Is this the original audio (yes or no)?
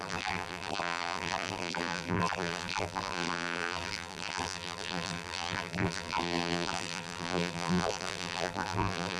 no